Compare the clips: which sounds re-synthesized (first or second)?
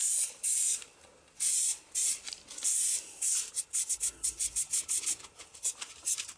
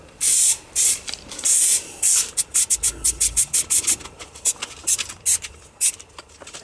first